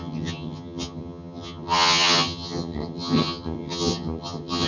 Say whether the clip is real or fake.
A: fake